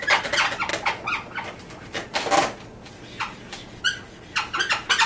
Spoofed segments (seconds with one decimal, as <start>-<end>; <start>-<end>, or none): none